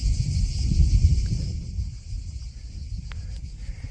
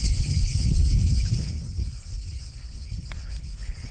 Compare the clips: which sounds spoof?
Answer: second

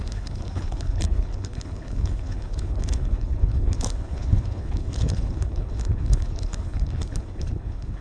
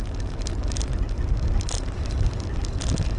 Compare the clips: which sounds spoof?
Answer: first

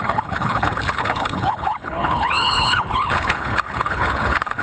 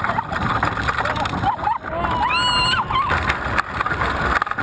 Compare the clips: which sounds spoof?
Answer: first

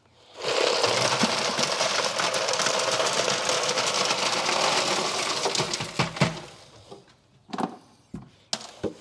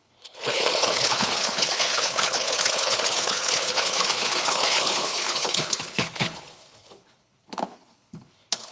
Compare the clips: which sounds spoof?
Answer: second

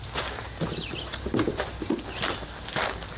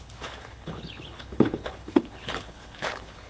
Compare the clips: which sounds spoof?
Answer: second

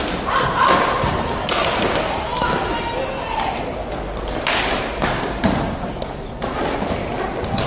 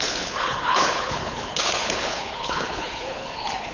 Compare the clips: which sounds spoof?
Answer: second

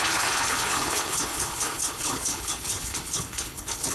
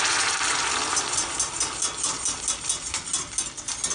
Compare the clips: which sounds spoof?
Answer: first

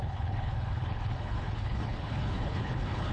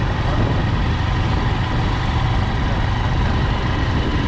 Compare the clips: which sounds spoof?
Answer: first